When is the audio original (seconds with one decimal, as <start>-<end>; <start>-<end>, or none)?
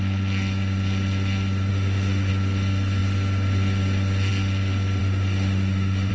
0.0-1.7; 2.3-5.0